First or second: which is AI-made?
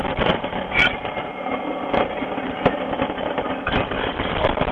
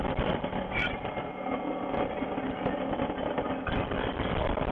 first